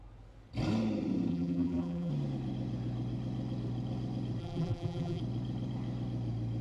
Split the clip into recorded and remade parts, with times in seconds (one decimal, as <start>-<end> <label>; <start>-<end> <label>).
0.0-1.3 recorded; 1.3-2.1 remade; 2.1-4.4 recorded; 4.4-5.2 remade; 5.2-6.6 recorded